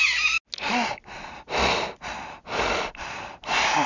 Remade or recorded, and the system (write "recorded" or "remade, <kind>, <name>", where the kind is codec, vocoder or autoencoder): recorded